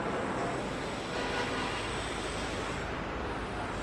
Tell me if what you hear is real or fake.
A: real